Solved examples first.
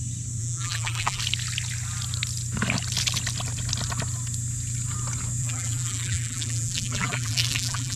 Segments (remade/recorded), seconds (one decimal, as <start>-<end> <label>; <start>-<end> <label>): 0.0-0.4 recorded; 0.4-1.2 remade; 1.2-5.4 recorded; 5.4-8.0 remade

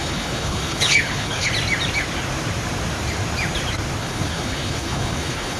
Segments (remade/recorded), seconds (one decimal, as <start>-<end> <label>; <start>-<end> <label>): 0.0-1.5 remade; 1.5-4.0 recorded; 4.0-5.6 remade

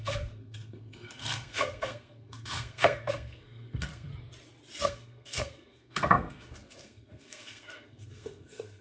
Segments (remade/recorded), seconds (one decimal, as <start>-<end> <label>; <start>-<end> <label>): 0.0-4.1 remade; 4.1-4.8 recorded; 4.8-8.8 remade

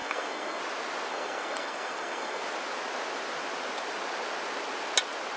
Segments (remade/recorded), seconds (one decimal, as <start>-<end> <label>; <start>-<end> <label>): 0.0-0.6 remade; 0.6-1.1 recorded; 1.1-2.4 remade; 2.4-5.4 recorded

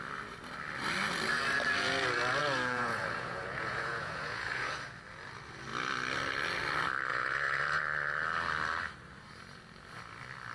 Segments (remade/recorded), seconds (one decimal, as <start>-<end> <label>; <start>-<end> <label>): 0.0-2.4 recorded; 2.4-4.8 remade; 4.8-7.1 recorded; 7.1-7.8 remade; 7.8-10.5 recorded

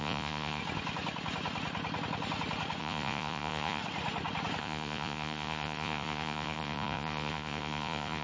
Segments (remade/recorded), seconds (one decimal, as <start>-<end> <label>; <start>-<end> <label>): 0.0-0.6 remade; 0.6-2.8 recorded; 2.8-3.8 remade; 3.8-4.6 recorded; 4.6-8.2 remade

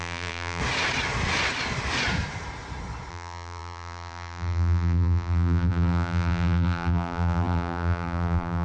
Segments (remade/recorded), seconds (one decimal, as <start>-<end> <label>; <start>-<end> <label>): 0.0-0.6 remade; 0.6-3.1 recorded; 3.1-8.6 remade

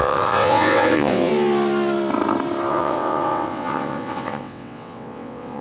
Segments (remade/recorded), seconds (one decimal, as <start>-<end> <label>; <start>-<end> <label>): 0.0-1.3 remade; 1.3-2.7 recorded; 2.7-5.6 remade